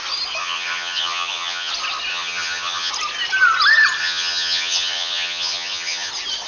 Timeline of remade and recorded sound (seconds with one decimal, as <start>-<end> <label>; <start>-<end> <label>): 0.0-0.4 recorded; 0.4-1.7 remade; 1.7-2.1 recorded; 2.1-2.9 remade; 2.9-4.0 recorded; 4.0-6.1 remade; 6.1-6.5 recorded